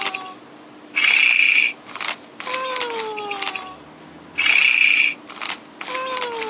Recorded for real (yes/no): yes